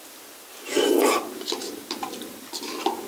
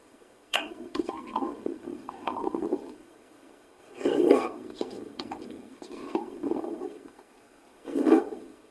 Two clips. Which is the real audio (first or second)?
first